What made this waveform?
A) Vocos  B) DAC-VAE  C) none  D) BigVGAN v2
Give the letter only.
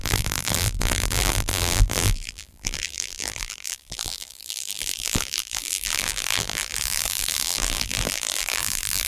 D